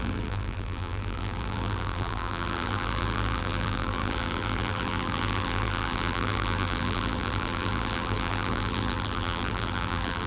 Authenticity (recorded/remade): remade